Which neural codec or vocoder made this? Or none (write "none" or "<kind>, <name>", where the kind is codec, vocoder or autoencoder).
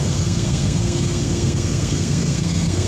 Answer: codec, SNAC